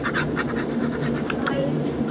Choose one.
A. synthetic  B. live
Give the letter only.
A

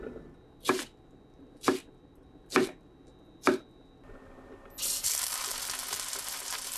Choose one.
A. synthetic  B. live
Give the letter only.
B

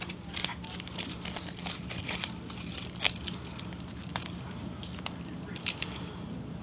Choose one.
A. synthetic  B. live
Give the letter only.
B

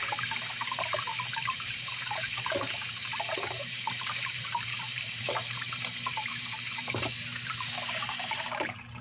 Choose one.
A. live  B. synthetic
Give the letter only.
B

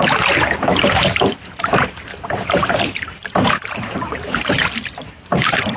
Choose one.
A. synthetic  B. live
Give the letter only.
A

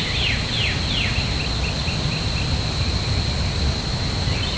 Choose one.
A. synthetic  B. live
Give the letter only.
B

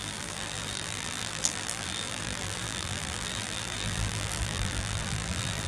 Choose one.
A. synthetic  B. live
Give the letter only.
A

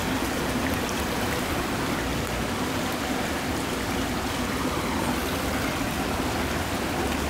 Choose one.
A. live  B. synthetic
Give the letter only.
A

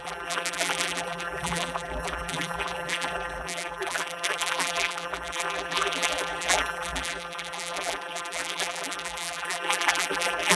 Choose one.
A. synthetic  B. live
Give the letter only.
A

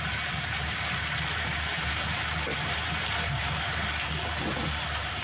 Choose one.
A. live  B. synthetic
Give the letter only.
B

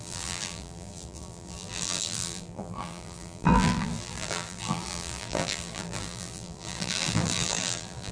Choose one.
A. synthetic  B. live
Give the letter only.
A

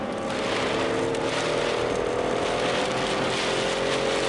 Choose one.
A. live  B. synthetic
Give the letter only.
A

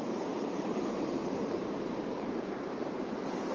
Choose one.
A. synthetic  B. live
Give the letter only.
A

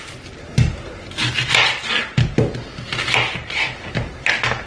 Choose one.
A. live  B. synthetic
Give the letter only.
A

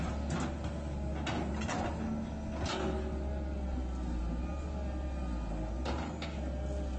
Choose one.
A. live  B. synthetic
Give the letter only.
A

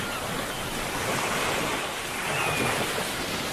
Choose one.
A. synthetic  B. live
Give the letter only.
B